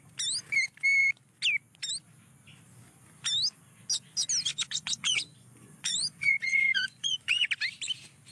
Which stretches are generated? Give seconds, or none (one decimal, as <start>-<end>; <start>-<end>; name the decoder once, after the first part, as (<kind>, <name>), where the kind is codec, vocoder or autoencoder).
4.5-7.5 (vocoder, Vocos)